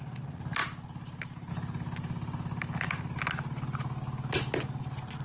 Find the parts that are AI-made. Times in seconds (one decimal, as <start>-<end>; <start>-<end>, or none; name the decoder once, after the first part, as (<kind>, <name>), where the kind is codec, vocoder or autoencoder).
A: none